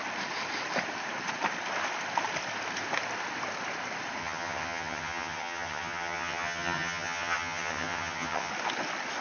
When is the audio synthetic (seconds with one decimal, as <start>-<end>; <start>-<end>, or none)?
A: 4.2-8.5